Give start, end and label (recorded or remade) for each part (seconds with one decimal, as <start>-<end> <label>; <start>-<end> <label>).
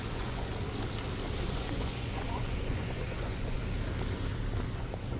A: 0.0-0.5 remade; 0.5-1.5 recorded; 1.5-3.6 remade; 3.6-4.8 recorded; 4.8-5.2 remade